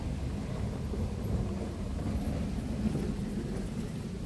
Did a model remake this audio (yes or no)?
no